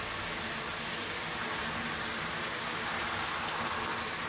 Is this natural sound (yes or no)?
yes